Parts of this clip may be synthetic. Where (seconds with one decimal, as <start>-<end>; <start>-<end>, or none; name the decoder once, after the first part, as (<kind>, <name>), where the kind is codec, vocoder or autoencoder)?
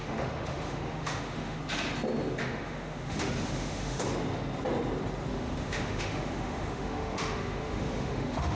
0.0-1.6 (autoencoder, DAC-VAE); 2.4-4.0; 5.3-8.5